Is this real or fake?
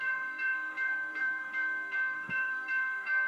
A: fake